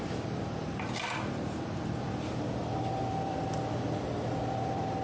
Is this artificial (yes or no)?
yes